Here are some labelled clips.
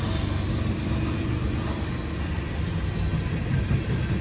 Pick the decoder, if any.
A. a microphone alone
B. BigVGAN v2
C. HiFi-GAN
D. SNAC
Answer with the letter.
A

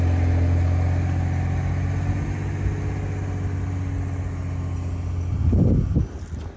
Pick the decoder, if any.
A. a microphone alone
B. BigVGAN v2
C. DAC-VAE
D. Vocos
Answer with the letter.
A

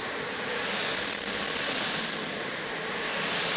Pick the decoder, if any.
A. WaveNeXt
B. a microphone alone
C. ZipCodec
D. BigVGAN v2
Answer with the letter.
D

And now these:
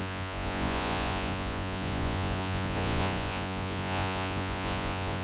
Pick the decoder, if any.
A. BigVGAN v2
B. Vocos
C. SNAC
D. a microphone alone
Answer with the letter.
B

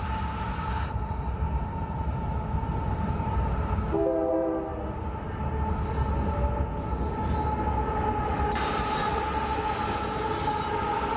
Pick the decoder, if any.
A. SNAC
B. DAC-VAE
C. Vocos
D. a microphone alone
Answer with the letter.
D